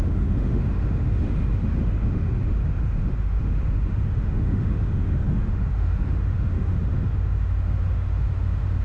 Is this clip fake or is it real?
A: fake